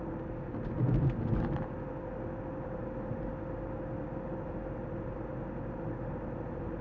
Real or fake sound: real